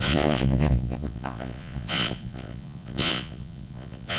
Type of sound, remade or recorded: remade